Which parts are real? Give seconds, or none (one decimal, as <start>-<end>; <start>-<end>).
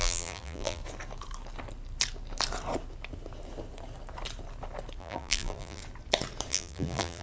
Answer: 0.8-5.0; 5.8-6.5